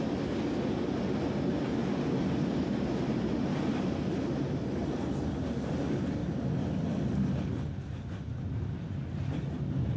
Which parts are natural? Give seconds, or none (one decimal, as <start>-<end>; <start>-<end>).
0.0-10.0